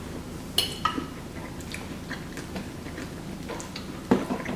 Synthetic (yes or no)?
no